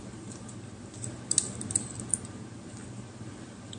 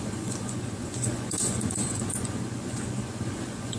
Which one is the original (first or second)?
first